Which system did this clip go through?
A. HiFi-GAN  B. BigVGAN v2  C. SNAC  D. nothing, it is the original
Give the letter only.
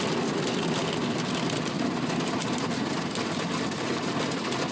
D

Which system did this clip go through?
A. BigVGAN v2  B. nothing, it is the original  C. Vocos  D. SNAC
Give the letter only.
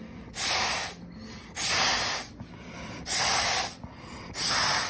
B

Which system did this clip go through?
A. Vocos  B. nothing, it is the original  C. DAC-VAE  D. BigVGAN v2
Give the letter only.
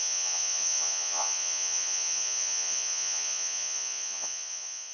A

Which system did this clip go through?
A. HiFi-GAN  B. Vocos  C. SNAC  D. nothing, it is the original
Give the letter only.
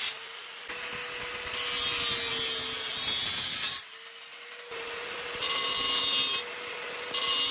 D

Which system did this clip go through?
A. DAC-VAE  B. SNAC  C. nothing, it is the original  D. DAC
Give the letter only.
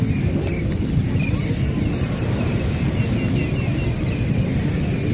C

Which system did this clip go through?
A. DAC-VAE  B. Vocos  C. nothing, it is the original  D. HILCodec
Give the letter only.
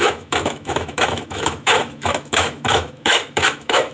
A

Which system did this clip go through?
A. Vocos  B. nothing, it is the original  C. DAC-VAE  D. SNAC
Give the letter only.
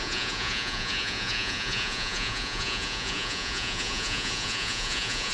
A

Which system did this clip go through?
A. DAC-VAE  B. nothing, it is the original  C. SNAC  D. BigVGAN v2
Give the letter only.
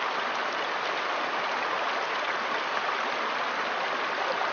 B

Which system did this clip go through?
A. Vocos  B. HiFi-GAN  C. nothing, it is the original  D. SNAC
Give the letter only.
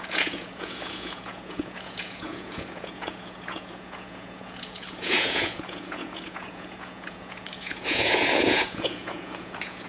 A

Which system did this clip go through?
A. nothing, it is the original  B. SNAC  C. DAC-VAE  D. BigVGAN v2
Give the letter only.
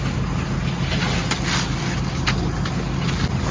A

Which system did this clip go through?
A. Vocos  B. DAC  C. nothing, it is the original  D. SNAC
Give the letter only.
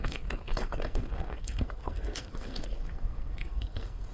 D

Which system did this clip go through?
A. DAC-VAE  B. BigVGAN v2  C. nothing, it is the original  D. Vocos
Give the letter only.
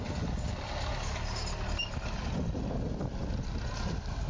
C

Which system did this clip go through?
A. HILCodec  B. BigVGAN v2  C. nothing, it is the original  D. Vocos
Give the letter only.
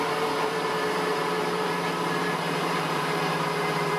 B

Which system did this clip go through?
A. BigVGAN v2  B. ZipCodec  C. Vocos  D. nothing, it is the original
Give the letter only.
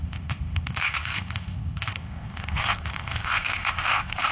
B